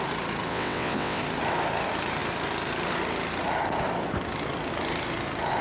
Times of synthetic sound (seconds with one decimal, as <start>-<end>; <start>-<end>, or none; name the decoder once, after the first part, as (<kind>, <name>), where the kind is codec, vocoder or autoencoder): 0.5-1.2 (vocoder, WaveNeXt)